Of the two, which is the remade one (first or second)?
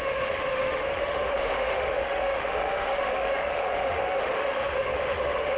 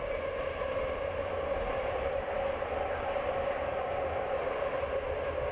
first